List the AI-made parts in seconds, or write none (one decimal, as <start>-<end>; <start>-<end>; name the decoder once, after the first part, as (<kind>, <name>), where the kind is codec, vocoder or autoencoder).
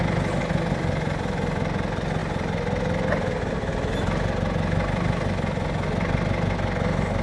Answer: none